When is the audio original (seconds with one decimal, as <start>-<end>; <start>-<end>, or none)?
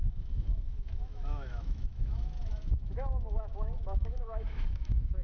none